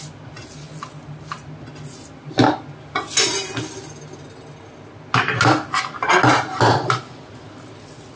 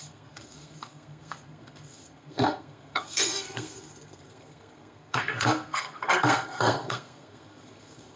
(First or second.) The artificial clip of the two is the second